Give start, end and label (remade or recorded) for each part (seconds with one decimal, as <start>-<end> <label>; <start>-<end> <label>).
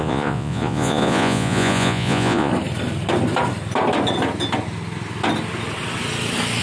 0.0-2.5 remade; 2.5-6.6 recorded